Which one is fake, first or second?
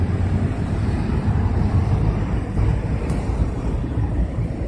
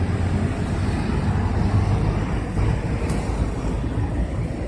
first